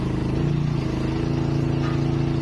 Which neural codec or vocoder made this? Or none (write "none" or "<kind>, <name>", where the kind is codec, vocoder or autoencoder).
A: none